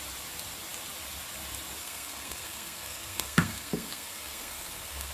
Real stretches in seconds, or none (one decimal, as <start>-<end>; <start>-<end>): 0.0-1.8